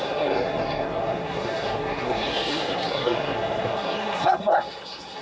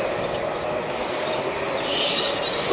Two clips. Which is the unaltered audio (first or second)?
second